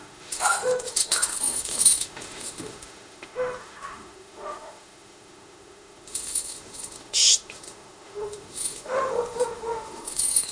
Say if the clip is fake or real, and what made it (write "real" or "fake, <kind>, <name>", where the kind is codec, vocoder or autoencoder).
fake, autoencoder, DAC-VAE